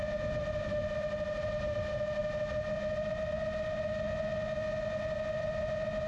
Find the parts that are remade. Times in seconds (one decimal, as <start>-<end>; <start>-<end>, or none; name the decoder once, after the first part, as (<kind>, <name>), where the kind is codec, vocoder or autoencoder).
none